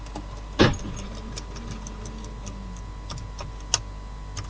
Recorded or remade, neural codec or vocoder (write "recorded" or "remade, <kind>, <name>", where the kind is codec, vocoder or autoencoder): recorded